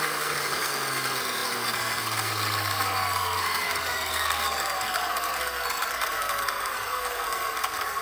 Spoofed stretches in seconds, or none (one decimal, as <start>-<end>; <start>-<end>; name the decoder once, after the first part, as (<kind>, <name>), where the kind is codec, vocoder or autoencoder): 0.0-8.0 (codec, SNAC)